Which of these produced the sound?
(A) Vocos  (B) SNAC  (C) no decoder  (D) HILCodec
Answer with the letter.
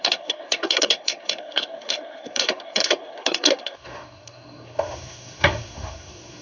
B